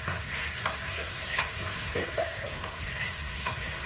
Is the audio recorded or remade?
remade